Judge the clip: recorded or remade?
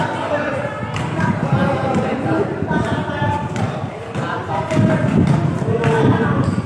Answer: recorded